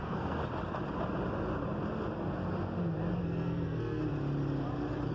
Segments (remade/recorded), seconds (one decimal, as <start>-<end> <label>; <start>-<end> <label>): 0.0-0.4 remade; 0.4-3.2 recorded; 3.2-4.0 remade; 4.0-5.1 recorded

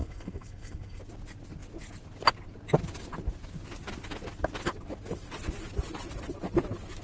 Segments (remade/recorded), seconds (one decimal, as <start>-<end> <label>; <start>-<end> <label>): 0.0-1.0 remade; 1.0-7.0 recorded

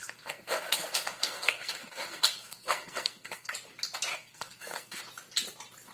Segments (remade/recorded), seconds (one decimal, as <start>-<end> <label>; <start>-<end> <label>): 0.0-3.5 remade; 3.5-4.1 recorded; 4.1-5.0 remade; 5.0-5.9 recorded